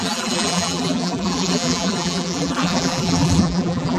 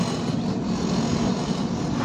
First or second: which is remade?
first